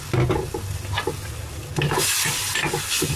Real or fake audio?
real